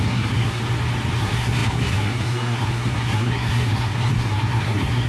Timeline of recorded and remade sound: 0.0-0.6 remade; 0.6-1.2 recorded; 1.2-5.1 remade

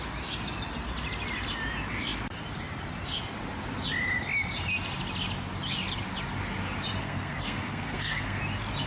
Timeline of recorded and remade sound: 0.0-7.0 recorded; 7.0-8.4 remade; 8.4-8.9 recorded

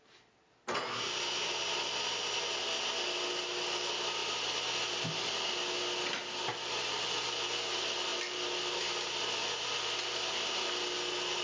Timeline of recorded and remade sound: 0.0-11.4 recorded

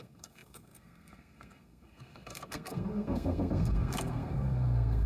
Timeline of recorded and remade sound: 0.0-5.1 remade